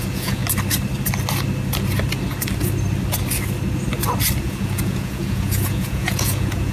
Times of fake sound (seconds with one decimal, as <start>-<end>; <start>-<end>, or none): 0.0-0.4; 4.4-6.7